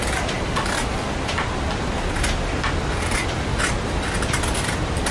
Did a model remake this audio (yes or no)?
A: no